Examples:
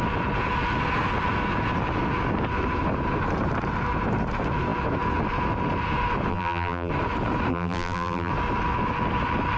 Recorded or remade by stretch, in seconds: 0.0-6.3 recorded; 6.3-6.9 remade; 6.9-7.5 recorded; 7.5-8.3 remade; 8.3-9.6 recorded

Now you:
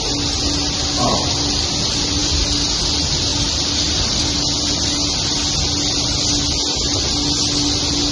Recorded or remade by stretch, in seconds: 0.0-8.1 recorded

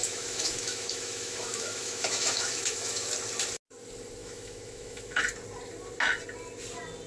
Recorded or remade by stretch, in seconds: 0.0-3.1 remade; 3.1-4.2 recorded; 4.2-5.2 remade; 5.2-7.1 recorded

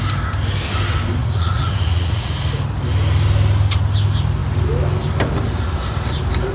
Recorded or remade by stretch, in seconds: 0.0-1.2 recorded; 1.2-2.3 remade; 2.3-6.5 recorded

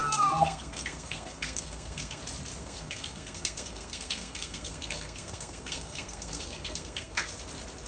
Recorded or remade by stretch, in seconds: 0.0-2.2 remade; 2.2-2.6 recorded; 2.6-7.3 remade; 7.3-7.9 recorded